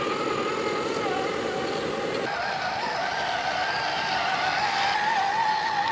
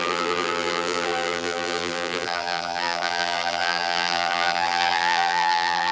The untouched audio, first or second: first